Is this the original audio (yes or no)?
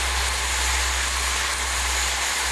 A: yes